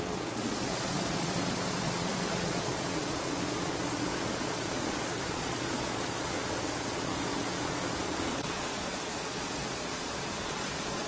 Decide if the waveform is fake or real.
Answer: fake